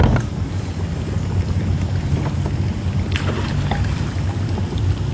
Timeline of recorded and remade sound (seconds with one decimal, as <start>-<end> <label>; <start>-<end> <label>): 0.0-5.1 recorded